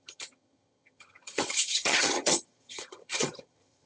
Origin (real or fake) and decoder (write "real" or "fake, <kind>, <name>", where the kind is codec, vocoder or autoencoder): fake, vocoder, HiFi-GAN